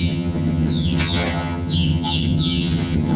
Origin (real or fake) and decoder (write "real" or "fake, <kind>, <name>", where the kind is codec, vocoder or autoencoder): fake, vocoder, HiFi-GAN